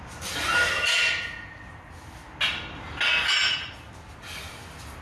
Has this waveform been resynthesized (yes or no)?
no